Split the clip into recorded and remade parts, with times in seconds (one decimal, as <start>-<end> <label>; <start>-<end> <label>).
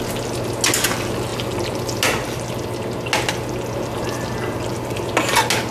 0.0-5.7 recorded